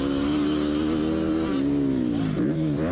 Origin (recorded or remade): recorded